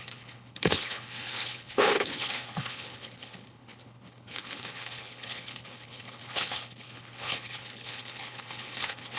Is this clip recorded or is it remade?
remade